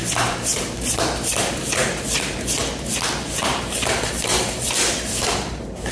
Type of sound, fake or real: fake